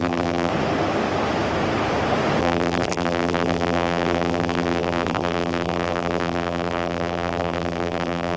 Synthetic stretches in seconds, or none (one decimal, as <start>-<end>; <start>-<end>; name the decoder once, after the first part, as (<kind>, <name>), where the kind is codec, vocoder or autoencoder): 0.0-0.5 (vocoder, BigVGAN v2); 2.4-8.4